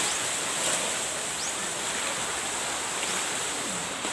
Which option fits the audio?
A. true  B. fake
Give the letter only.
A